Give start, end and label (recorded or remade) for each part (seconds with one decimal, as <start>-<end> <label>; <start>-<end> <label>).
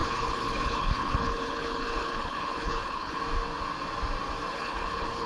0.0-3.2 remade; 3.2-4.5 recorded; 4.5-5.3 remade